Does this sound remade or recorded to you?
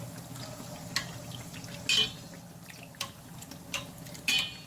recorded